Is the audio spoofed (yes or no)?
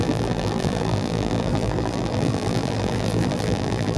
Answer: yes